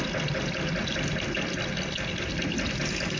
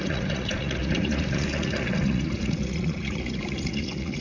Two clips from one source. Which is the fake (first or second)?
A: second